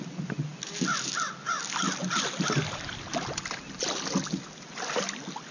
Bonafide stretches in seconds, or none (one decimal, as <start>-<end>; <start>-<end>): 0.0-5.5